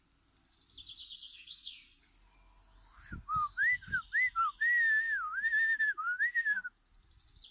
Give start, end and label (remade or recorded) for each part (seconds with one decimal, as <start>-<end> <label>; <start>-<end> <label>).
0.0-1.0 recorded; 1.0-2.0 remade; 2.0-7.5 recorded